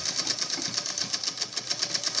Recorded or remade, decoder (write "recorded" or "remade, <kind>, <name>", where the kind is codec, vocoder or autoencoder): recorded